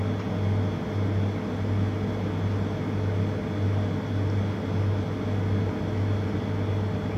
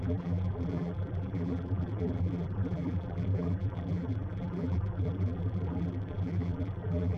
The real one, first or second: first